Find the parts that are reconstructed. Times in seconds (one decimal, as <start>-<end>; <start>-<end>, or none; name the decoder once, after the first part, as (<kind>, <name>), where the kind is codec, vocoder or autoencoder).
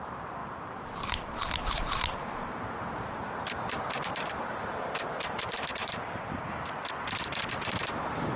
0.4-5.2 (vocoder, BigVGAN v2); 5.7-6.5